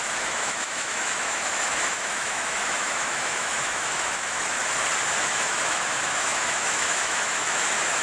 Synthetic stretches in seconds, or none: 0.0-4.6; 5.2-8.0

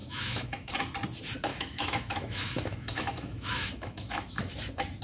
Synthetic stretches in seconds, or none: 0.0-0.7; 1.5-4.5

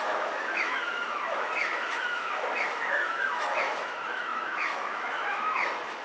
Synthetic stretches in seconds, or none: 0.0-6.0

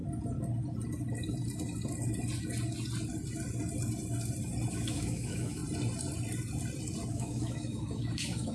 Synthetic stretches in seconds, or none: 4.7-5.6; 7.1-8.5

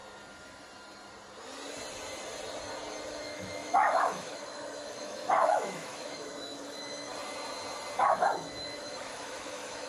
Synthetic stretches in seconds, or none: 3.1-7.1; 8.0-9.9

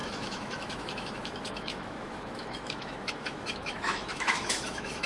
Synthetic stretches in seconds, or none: 0.0-5.1

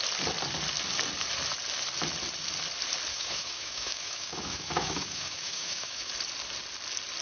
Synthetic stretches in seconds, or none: 3.1-6.1

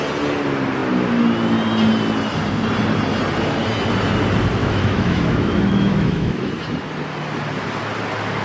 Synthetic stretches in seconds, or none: 4.6-6.5